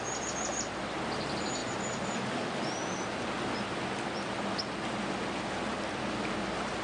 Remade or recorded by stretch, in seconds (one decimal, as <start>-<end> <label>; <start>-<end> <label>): 0.0-6.8 recorded